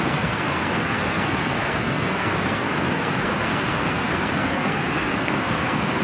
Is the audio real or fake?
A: fake